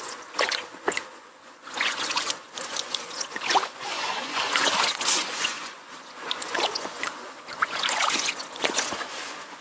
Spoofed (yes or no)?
yes